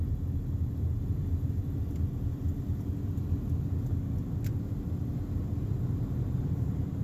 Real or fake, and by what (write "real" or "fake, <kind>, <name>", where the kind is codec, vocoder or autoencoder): real